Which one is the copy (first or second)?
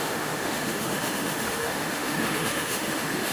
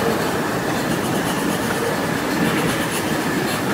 first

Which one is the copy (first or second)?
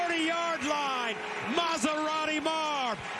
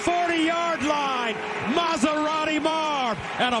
second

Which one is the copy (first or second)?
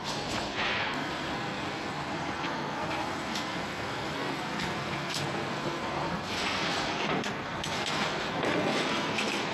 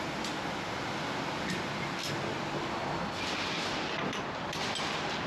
first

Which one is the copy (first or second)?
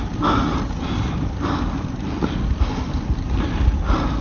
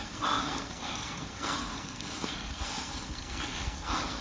second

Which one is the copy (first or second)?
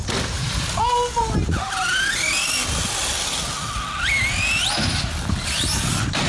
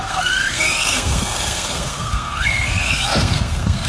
second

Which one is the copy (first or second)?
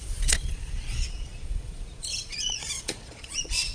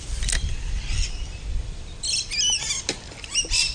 first